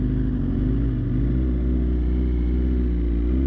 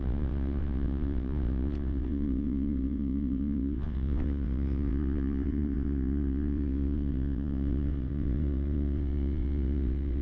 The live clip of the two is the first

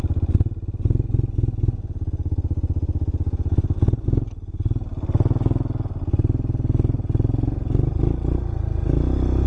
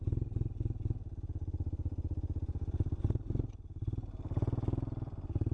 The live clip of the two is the first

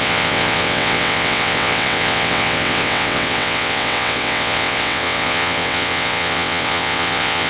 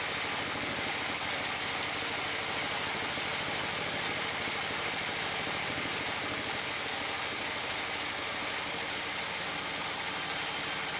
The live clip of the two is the second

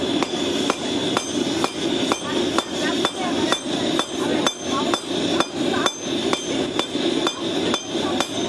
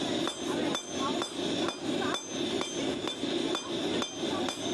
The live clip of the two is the second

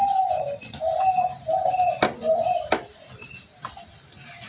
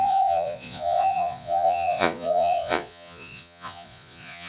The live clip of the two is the first